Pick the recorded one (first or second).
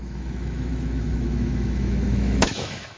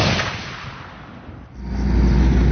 second